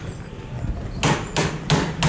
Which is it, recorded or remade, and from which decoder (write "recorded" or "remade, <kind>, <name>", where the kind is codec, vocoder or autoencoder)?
recorded